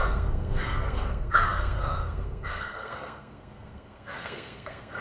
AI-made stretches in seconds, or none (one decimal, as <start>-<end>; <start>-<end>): 0.0-5.0